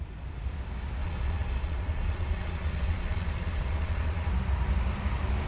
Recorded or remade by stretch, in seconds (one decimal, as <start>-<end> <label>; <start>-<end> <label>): 0.0-1.0 recorded; 1.0-4.3 remade; 4.3-5.5 recorded